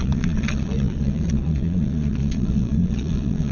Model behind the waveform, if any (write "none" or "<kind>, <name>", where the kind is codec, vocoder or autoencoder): vocoder, Vocos